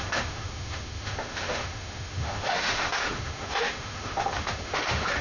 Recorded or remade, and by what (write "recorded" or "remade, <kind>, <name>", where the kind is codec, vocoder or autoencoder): remade, autoencoder, DAC-VAE